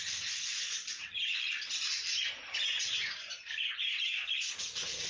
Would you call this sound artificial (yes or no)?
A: no